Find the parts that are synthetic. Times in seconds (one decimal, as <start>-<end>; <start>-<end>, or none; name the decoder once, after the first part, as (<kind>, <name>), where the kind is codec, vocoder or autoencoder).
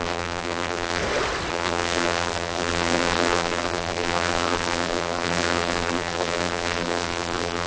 0.0-1.0 (vocoder, BigVGAN v2); 1.5-7.7